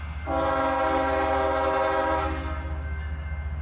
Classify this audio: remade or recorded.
recorded